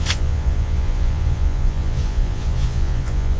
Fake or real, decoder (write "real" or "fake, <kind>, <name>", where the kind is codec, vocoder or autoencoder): fake, vocoder, Vocos